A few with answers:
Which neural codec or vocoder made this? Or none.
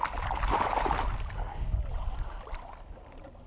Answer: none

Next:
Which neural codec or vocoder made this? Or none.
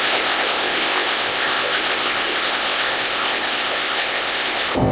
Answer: codec, ZipCodec